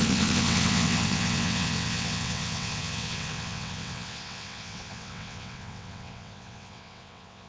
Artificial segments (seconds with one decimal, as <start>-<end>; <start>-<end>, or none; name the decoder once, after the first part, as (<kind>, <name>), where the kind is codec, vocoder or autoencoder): 0.0-7.5 (vocoder, WaveNeXt)